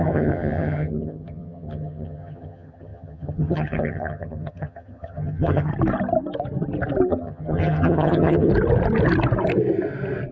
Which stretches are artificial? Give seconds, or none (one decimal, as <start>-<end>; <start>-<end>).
0.0-5.7; 7.1-8.5